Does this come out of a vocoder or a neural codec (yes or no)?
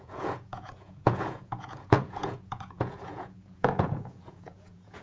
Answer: yes